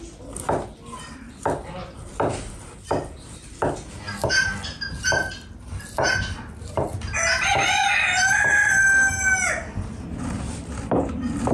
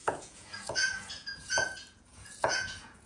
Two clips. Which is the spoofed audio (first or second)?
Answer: second